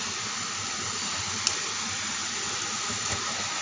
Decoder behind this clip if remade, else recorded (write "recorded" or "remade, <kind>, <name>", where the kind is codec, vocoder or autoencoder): recorded